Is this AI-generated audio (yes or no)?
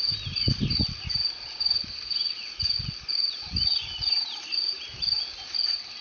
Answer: no